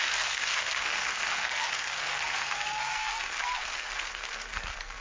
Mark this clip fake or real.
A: fake